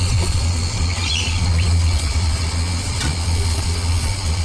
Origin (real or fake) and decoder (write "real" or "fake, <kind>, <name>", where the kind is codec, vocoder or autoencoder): fake, vocoder, Vocos